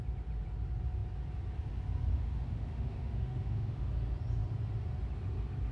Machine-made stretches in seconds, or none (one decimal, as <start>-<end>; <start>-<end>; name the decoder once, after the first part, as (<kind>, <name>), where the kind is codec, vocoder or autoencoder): 2.1-3.9 (autoencoder, DAC-VAE)